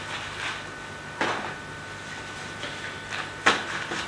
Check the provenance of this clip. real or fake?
real